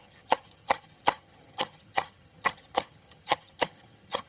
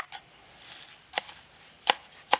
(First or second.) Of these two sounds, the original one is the second